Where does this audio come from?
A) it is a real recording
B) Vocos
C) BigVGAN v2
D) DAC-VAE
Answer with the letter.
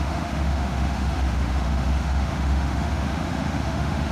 D